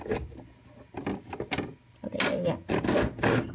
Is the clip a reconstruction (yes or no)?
no